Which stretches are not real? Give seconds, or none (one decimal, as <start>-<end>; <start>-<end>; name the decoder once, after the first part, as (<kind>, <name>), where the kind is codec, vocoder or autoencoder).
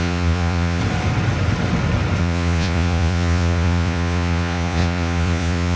0.0-0.8 (vocoder, Vocos); 2.2-5.8